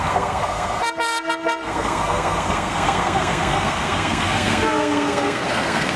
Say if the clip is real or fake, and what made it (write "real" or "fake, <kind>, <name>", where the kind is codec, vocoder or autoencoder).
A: fake, codec, SNAC